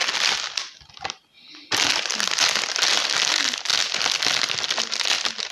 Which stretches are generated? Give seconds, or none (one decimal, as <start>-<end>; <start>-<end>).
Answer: none

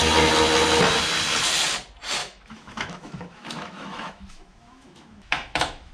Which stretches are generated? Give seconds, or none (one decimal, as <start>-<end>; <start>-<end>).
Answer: 2.2-5.9

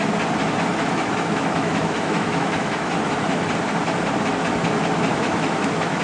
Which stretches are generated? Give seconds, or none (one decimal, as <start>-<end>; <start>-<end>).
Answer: 0.7-3.5; 5.1-6.0